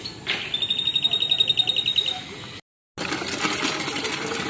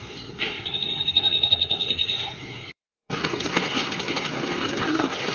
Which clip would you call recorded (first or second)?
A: first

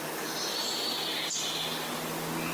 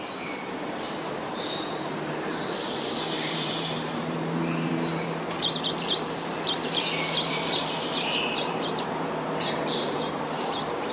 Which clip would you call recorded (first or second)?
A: first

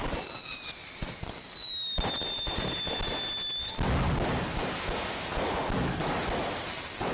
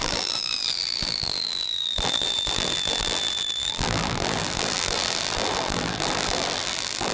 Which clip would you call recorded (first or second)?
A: first